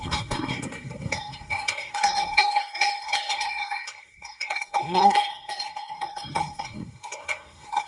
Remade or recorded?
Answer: remade